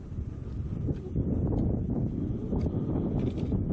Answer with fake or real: real